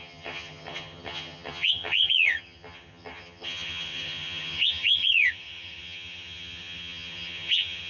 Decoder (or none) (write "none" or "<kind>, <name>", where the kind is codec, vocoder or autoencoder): vocoder, HiFi-GAN